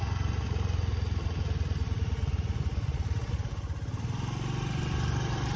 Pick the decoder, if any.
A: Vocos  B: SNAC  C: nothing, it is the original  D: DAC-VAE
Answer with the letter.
C